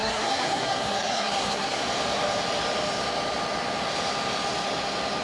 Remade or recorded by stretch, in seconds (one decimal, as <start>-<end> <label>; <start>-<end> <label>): 0.0-1.8 remade; 1.8-5.2 recorded